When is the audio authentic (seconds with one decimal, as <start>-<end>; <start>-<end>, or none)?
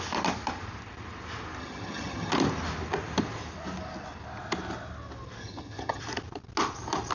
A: 0.0-1.6; 2.3-5.4; 6.0-7.1